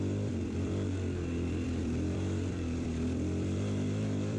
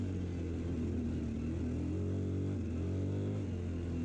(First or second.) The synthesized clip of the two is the first